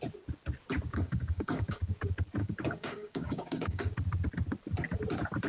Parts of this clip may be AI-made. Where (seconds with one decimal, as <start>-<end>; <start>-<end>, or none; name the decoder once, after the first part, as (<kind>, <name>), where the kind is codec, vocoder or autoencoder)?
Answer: 0.9-1.8 (codec, DAC); 2.4-3.9